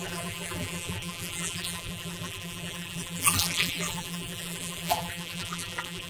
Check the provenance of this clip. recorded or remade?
remade